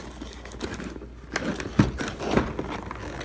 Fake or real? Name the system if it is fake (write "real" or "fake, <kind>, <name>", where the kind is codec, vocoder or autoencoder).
real